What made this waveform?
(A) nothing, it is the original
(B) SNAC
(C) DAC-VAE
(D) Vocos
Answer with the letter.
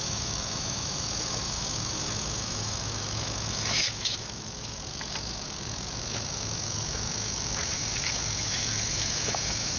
C